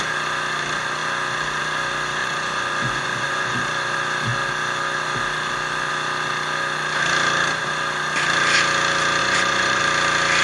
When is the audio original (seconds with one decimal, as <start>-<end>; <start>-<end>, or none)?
0.0-2.2; 3.6-9.2; 9.8-10.4